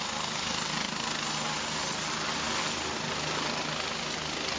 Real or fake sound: real